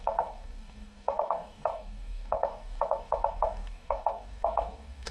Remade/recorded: remade